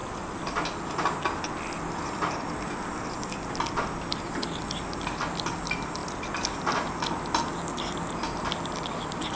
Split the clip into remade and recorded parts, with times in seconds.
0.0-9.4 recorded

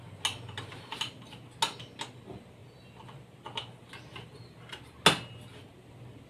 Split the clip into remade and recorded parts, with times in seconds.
0.0-6.3 recorded